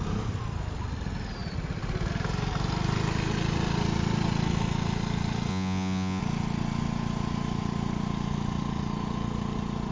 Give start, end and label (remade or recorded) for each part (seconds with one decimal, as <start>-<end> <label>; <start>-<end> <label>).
0.0-5.5 recorded; 5.5-6.2 remade; 6.2-9.9 recorded